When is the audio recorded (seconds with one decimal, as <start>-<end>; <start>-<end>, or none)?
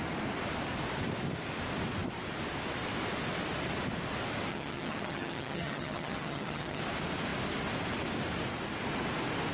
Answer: 0.0-4.5; 6.8-9.5